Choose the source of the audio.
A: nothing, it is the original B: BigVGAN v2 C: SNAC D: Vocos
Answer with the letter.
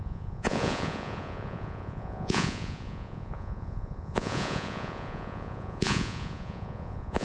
D